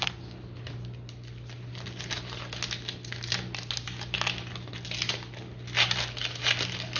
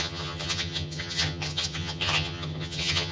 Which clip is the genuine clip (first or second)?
first